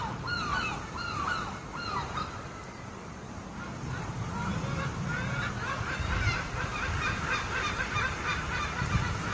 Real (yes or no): yes